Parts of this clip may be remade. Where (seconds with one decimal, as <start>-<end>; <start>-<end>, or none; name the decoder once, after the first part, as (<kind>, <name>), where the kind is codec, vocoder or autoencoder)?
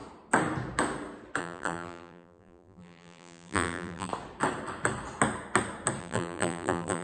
1.4-4.1 (vocoder, BigVGAN v2); 6.0-7.0